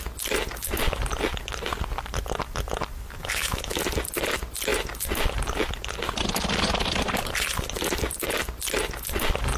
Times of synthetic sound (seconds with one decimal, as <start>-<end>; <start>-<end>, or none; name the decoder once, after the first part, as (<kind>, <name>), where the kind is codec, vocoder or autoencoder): 3.2-3.8 (autoencoder, DAC-VAE)